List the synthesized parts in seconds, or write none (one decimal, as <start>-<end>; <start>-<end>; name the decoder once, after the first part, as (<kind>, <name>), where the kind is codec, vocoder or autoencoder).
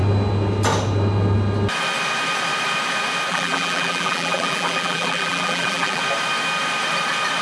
3.3-6.0 (vocoder, BigVGAN v2)